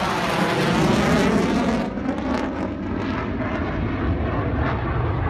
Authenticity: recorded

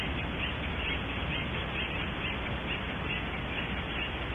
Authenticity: recorded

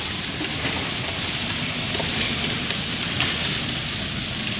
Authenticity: recorded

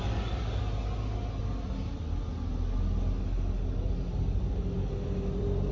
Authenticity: recorded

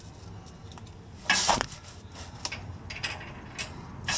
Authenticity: recorded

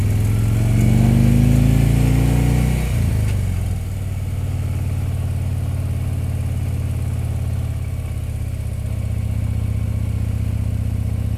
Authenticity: recorded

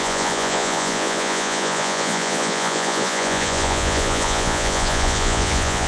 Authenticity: remade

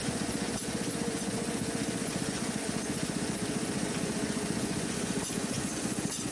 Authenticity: remade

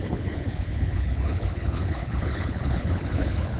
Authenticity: remade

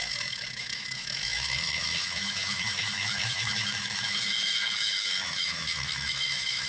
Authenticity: remade